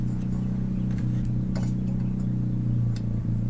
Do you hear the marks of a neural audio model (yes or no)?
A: no